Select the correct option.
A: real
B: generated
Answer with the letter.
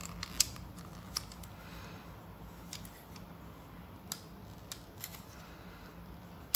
A